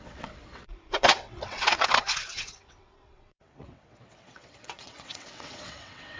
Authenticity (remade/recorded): remade